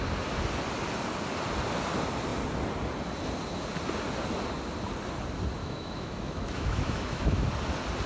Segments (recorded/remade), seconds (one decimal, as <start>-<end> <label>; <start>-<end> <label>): 0.0-5.6 recorded; 5.6-7.5 remade; 7.5-8.1 recorded